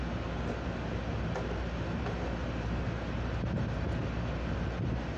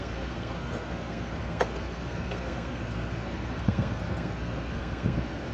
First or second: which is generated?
second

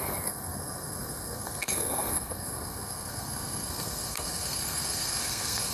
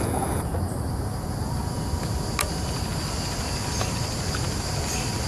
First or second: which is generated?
first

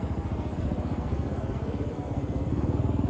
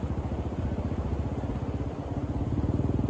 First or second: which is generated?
first